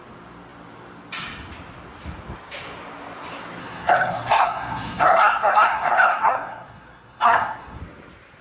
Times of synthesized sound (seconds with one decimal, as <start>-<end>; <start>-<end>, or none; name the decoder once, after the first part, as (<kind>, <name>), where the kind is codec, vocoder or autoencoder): 3.6-7.8 (codec, SNAC)